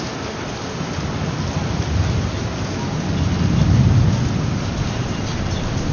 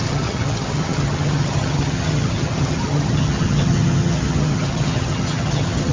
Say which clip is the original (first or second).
first